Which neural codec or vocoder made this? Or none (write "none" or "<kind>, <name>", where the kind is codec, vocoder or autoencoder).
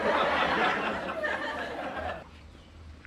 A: vocoder, BigVGAN v2